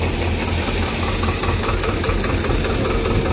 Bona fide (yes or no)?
yes